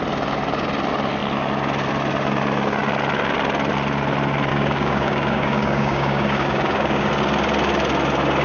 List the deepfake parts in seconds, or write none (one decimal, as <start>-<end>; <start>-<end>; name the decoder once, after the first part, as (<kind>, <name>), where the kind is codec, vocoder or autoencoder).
4.5-7.1 (codec, DAC)